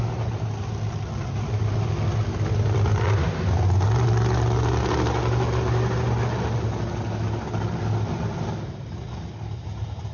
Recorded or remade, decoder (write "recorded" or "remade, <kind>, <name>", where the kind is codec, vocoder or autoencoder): recorded